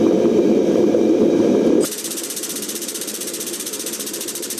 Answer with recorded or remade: remade